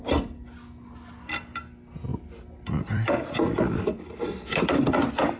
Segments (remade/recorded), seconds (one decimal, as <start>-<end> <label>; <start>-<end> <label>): 0.0-2.1 recorded; 2.1-4.8 remade; 4.8-5.4 recorded